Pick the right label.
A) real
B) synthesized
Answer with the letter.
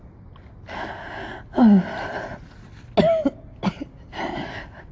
A